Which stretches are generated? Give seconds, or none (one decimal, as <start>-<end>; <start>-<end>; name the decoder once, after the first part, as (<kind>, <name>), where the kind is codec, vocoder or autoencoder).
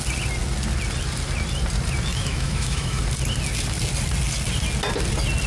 2.1-3.0 (autoencoder, DAC-VAE)